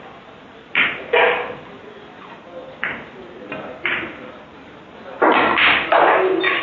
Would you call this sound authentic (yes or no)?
yes